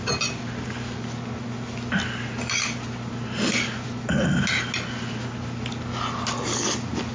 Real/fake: real